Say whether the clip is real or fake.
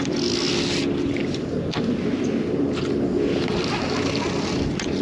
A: real